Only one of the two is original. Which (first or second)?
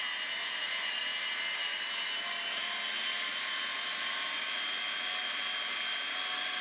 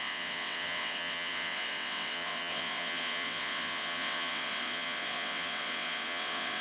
first